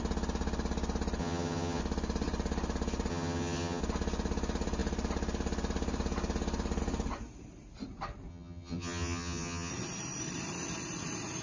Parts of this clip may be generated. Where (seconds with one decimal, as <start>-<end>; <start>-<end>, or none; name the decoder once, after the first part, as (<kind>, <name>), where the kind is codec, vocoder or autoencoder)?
1.2-1.8 (vocoder, HiFi-GAN); 3.1-3.8; 8.3-9.7